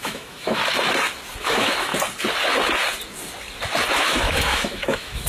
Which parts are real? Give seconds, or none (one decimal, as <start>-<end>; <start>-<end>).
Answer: 0.6-1.4; 1.9-3.9